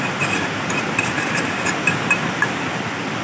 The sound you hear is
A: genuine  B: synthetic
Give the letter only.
A